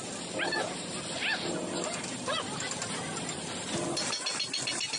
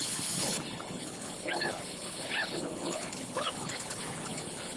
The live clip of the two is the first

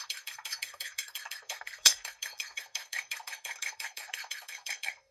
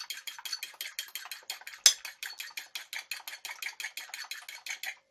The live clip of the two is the second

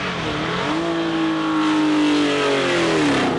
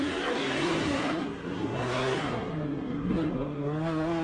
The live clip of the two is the first